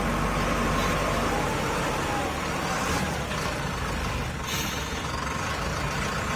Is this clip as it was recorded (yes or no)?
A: yes